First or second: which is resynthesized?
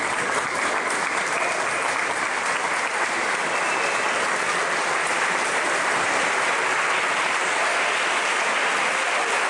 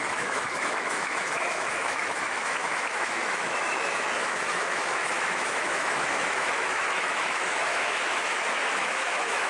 second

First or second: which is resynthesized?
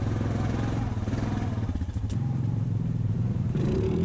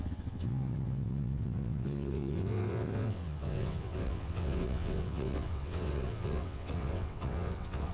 second